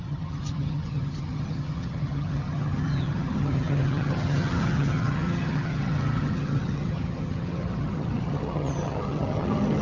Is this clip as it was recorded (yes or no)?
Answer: no